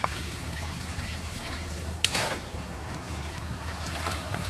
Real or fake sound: fake